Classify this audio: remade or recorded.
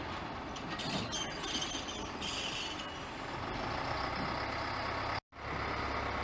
recorded